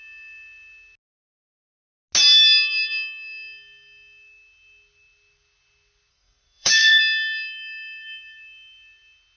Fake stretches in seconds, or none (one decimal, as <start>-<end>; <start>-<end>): 6.1-7.0